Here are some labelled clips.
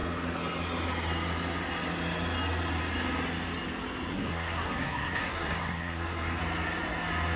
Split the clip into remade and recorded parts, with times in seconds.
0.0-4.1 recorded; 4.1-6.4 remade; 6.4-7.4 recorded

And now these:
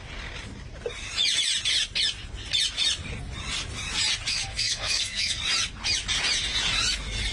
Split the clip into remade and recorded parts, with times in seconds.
0.0-4.3 recorded; 4.3-5.4 remade; 5.4-7.3 recorded

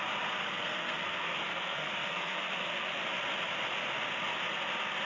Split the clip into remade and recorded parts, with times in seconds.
0.0-0.4 recorded; 0.4-3.0 remade; 3.0-5.1 recorded

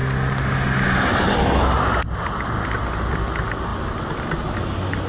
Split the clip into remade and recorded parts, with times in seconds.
0.0-5.1 recorded

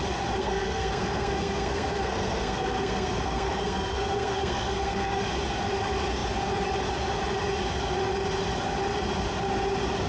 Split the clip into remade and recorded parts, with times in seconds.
0.0-0.4 recorded; 0.4-5.2 remade; 5.2-10.1 recorded

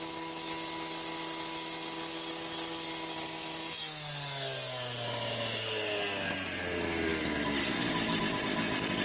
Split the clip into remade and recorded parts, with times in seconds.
0.0-9.0 recorded

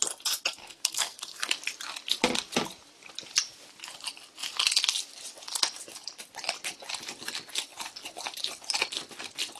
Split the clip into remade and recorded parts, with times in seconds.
0.0-0.6 recorded; 0.6-1.5 remade; 1.5-9.6 recorded

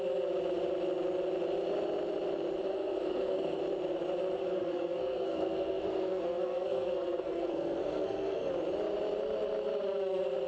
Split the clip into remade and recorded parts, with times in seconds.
0.0-2.7 recorded; 2.7-3.6 remade; 3.6-4.4 recorded; 4.4-8.5 remade; 8.5-10.5 recorded